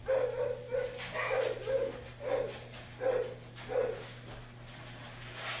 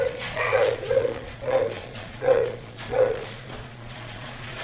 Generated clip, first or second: second